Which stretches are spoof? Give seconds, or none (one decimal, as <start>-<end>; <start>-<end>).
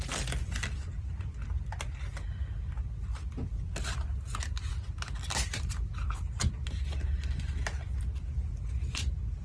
none